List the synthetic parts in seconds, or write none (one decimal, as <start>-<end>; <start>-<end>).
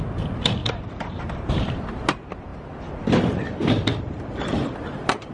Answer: 0.0-2.5; 4.0-5.3